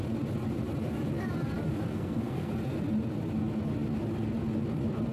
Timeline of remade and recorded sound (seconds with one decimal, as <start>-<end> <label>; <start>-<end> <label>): 0.0-1.9 recorded; 1.9-2.5 remade; 2.5-5.1 recorded